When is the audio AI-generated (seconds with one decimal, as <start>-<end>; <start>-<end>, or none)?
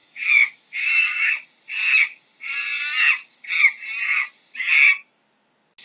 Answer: 0.0-1.3